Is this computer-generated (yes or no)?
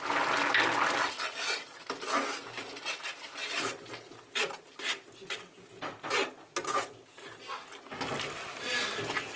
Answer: no